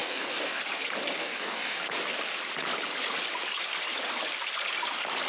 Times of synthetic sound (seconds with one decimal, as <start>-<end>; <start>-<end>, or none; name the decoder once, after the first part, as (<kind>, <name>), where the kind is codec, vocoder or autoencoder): 0.0-0.6 (codec, DAC); 1.2-1.8